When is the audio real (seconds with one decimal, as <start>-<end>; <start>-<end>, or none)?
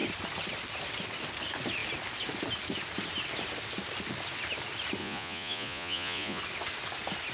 0.0-5.0; 6.4-7.3